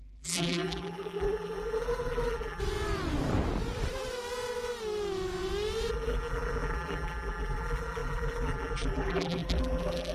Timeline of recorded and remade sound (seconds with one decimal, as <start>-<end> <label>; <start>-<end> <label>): 0.0-2.6 remade; 2.6-5.9 recorded; 5.9-10.1 remade